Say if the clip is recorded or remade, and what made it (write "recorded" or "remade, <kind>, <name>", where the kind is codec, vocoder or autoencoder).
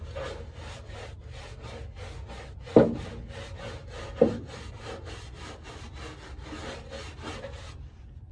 recorded